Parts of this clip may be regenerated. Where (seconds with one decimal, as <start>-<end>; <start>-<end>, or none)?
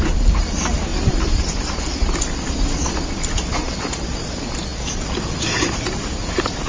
none